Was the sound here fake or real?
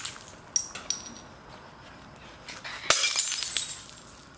real